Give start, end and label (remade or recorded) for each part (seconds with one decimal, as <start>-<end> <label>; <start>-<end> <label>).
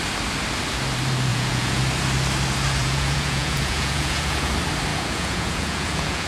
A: 0.0-1.3 recorded; 1.3-1.8 remade; 1.8-2.8 recorded; 2.8-4.5 remade; 4.5-4.9 recorded; 4.9-6.3 remade